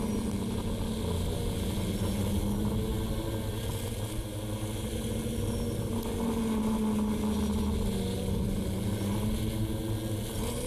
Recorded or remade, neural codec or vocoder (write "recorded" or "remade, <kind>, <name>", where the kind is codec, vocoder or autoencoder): recorded